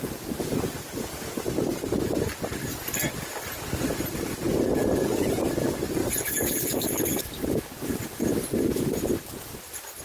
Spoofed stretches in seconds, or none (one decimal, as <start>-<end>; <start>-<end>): 6.0-6.9